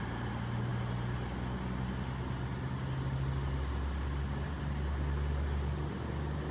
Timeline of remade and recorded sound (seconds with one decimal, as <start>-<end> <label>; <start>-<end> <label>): 0.0-6.5 recorded